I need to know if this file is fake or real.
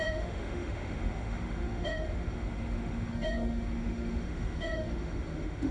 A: fake